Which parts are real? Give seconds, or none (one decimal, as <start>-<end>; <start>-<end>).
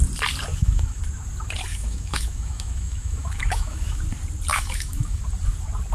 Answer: 0.0-0.5; 1.0-1.7; 4.0-4.5; 5.2-5.9